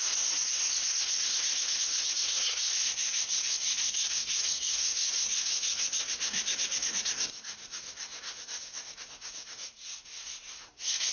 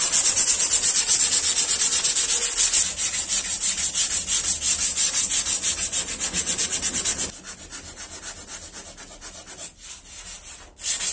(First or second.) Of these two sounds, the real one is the second